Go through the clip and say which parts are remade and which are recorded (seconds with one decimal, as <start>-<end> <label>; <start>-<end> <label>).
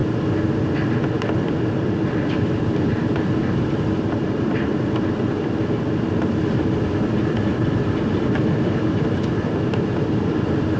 0.0-0.7 recorded; 0.7-4.7 remade; 4.7-5.3 recorded; 5.3-10.8 remade